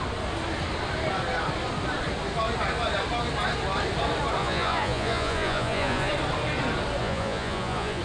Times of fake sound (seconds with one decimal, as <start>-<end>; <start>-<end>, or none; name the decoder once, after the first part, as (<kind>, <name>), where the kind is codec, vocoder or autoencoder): 4.4-6.1 (vocoder, Vocos); 7.0-8.0